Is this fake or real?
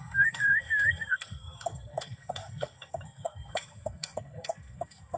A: fake